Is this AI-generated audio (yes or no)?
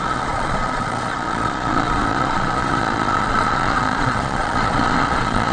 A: yes